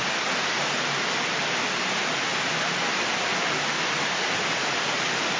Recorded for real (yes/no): no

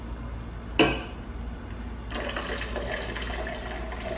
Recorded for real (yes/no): yes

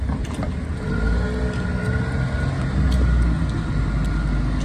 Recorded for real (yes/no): yes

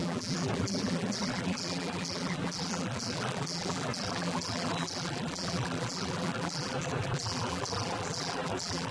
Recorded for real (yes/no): no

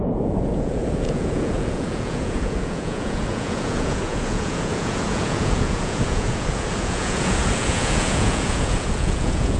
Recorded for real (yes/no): no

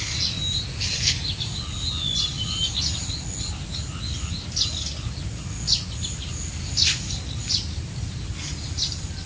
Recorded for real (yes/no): yes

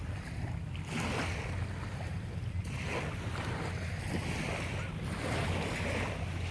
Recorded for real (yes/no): yes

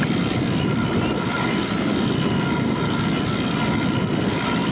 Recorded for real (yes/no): yes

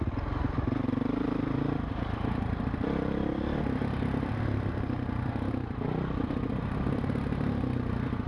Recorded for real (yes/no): no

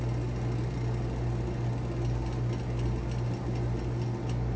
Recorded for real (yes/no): yes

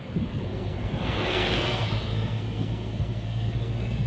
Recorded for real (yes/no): no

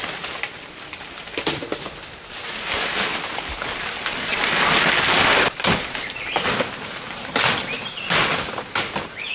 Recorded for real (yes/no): yes